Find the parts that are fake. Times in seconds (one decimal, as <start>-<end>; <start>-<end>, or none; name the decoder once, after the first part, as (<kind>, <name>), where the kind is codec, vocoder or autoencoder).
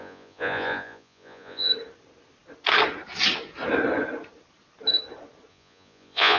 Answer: 0.0-1.7 (vocoder, Vocos); 5.5-6.4